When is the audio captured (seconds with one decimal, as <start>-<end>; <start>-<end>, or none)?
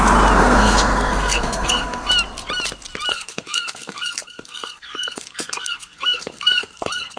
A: 0.0-0.4; 2.1-3.1